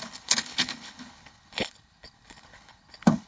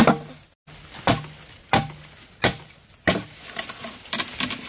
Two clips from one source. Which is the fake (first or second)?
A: first